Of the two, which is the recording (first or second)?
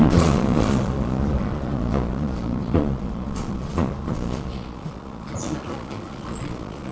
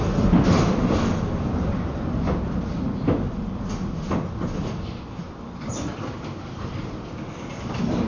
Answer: second